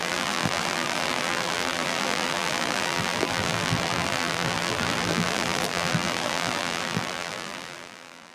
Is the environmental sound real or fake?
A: fake